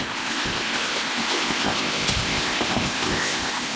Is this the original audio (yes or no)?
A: no